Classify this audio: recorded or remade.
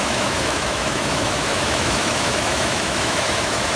remade